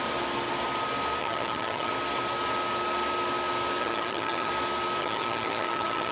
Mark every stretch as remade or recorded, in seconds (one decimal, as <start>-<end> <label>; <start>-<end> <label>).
0.0-1.2 recorded; 1.2-1.9 remade; 1.9-3.8 recorded; 3.8-4.5 remade; 4.5-5.0 recorded; 5.0-6.1 remade